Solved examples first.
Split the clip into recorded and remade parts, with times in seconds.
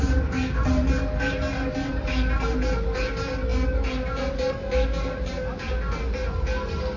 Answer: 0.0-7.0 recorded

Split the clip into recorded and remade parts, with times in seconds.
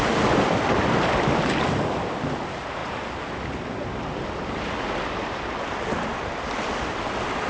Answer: 0.0-7.5 recorded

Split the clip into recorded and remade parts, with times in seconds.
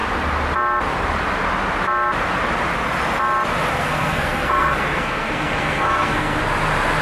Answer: 0.0-3.7 recorded; 3.7-6.4 remade; 6.4-7.0 recorded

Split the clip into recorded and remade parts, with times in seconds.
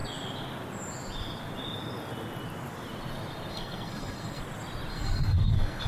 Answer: 0.0-3.5 recorded; 3.5-4.4 remade; 4.4-4.9 recorded; 4.9-5.9 remade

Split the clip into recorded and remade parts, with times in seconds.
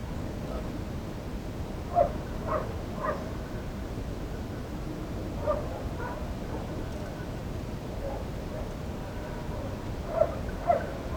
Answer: 0.0-0.6 remade; 0.6-11.2 recorded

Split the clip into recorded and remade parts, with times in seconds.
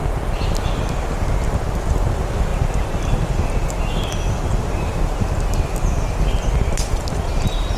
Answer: 0.0-7.8 recorded